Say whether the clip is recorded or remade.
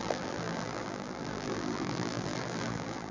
remade